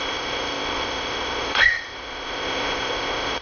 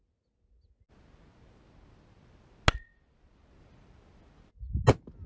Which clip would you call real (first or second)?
second